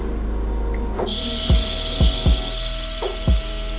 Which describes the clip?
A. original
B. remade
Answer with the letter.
A